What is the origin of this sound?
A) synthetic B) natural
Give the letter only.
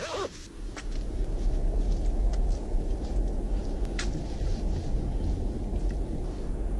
B